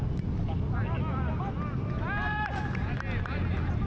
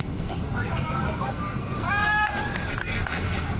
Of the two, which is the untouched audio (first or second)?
first